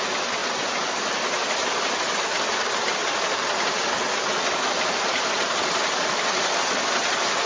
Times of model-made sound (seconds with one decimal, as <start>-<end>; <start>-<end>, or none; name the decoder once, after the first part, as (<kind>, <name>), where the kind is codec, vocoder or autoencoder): 0.4-2.1 (vocoder, BigVGAN v2)